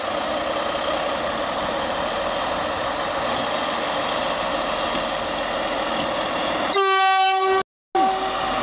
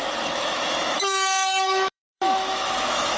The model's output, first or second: second